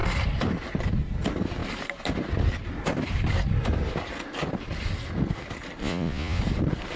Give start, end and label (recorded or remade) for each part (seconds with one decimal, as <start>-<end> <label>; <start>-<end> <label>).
0.0-5.8 recorded; 5.8-6.4 remade; 6.4-7.0 recorded